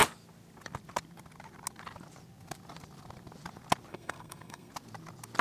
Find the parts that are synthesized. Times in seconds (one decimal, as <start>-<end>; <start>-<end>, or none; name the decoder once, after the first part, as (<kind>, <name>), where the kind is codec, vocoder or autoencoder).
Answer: 3.9-4.7 (codec, SNAC)